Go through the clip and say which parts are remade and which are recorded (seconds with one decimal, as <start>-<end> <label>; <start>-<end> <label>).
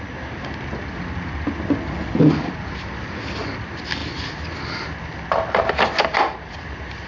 0.0-7.1 recorded